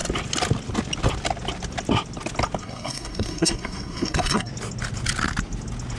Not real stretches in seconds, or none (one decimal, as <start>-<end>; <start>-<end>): 2.6-4.5